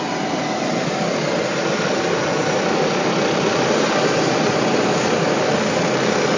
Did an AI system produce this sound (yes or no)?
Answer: no